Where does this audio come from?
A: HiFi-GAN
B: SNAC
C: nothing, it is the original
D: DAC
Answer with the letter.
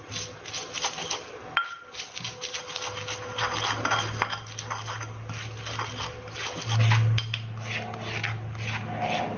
C